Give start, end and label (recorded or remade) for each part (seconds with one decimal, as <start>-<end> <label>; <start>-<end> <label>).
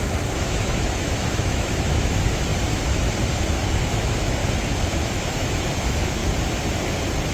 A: 0.0-2.5 remade; 2.5-3.8 recorded; 3.8-4.4 remade; 4.4-4.9 recorded; 4.9-6.2 remade; 6.2-7.3 recorded